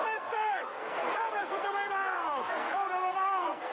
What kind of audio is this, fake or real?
fake